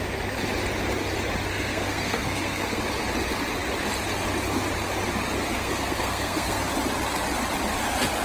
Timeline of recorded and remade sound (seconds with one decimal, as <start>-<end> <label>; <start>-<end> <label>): 0.0-1.5 recorded; 1.5-2.8 remade; 2.8-5.5 recorded; 5.5-6.6 remade; 6.6-8.2 recorded